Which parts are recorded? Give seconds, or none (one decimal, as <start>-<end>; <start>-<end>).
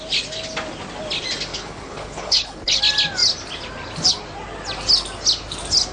0.0-1.5; 2.8-5.9